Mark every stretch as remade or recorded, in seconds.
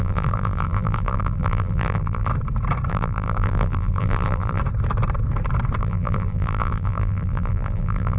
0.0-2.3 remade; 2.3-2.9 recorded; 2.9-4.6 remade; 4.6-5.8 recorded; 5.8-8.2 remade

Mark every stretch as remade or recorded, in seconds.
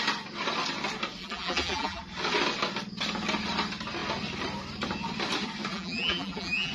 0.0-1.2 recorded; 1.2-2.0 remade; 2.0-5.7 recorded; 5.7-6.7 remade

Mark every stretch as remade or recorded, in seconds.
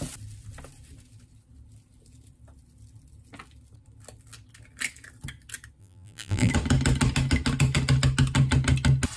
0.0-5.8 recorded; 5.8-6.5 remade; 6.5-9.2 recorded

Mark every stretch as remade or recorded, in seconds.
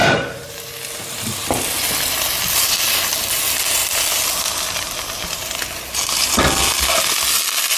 0.0-0.5 remade; 0.5-7.8 recorded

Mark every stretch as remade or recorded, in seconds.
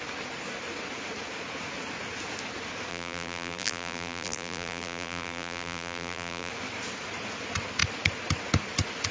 0.0-2.9 recorded; 2.9-6.5 remade; 6.5-9.1 recorded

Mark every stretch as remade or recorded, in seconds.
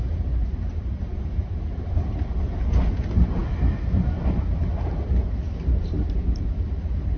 0.0-0.4 recorded; 0.4-1.0 remade; 1.0-7.2 recorded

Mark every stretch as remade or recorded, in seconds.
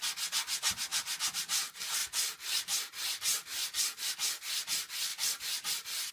0.0-0.9 recorded; 0.9-1.6 remade; 1.6-5.1 recorded; 5.1-6.1 remade